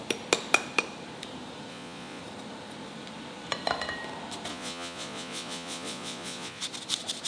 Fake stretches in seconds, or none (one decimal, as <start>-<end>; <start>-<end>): 1.7-2.2; 4.5-6.6